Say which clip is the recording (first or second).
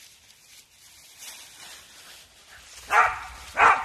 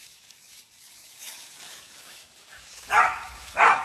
first